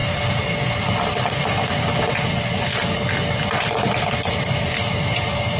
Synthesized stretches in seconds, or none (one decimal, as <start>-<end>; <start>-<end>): none